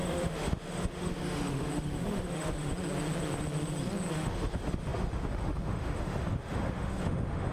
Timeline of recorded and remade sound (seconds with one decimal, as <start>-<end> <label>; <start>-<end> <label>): 0.0-2.7 remade; 2.7-4.1 recorded; 4.1-7.5 remade